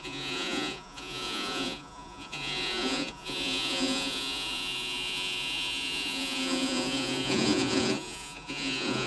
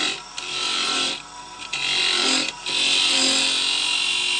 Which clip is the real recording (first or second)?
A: second